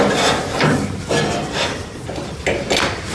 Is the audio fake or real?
real